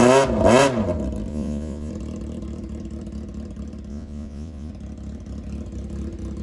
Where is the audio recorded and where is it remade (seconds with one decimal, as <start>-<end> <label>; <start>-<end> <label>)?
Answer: 0.0-1.3 recorded; 1.3-1.9 remade; 1.9-3.9 recorded; 3.9-4.7 remade; 4.7-6.4 recorded